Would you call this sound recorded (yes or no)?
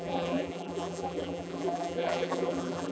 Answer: no